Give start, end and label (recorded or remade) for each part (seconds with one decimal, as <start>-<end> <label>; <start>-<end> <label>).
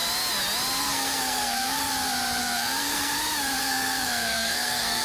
0.0-0.8 recorded; 0.8-1.9 remade; 1.9-2.4 recorded; 2.4-3.1 remade; 3.1-3.6 recorded; 3.6-5.0 remade